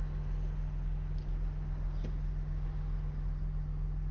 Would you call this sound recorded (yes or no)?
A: yes